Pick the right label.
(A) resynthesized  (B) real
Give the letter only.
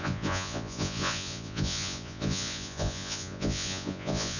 A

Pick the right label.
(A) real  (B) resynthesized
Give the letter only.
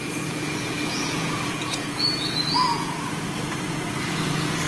B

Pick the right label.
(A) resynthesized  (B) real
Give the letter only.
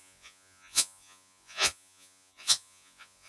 A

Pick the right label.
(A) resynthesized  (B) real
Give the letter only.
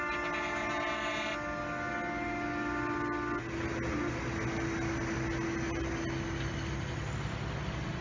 B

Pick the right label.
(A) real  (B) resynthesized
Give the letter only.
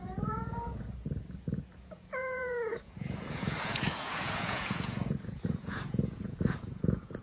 B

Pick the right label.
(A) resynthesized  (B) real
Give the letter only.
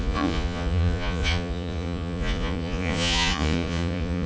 A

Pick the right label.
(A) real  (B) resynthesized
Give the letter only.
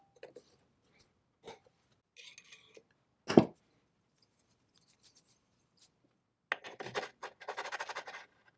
A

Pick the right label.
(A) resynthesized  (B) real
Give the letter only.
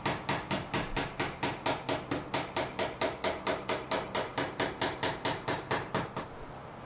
B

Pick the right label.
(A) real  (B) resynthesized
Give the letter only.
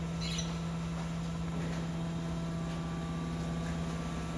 A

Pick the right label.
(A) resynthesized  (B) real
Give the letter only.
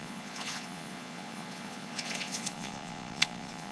A